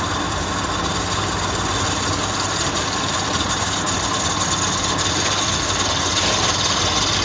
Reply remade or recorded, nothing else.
recorded